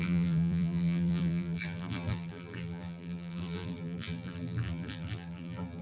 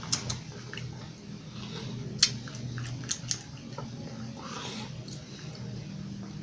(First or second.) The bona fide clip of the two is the second